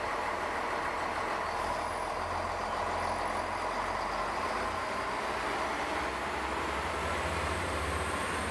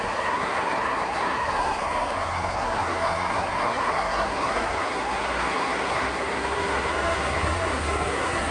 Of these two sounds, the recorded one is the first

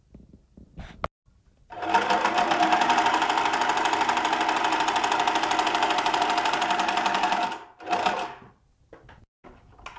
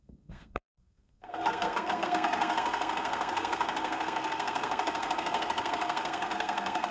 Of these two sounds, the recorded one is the first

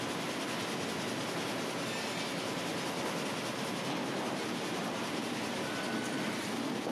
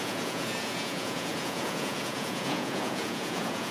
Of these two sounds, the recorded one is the first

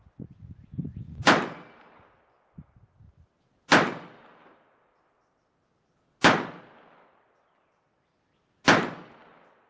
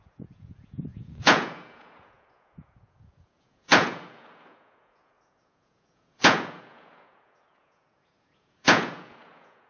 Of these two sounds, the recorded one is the first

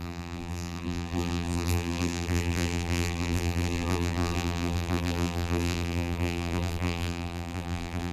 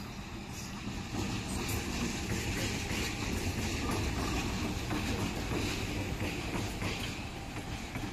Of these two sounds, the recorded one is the second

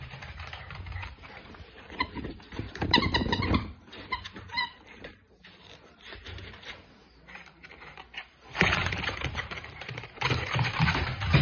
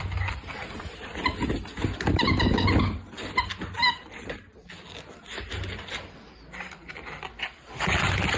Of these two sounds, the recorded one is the second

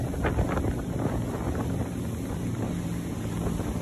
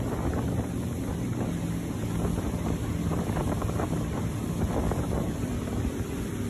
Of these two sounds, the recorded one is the first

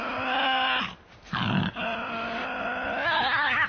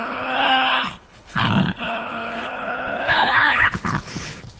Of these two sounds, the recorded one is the first